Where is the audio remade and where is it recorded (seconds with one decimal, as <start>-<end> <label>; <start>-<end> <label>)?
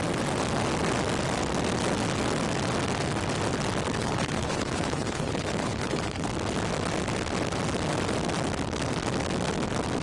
0.0-4.0 recorded; 4.0-6.3 remade; 6.3-10.0 recorded